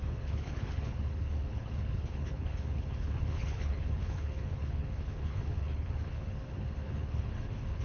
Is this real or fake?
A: fake